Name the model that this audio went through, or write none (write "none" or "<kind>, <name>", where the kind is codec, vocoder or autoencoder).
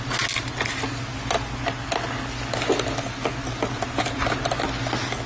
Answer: none